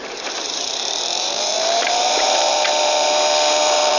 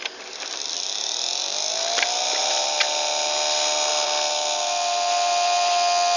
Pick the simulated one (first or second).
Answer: first